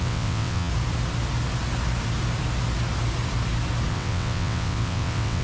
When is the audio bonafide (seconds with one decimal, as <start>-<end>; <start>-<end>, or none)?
0.7-3.9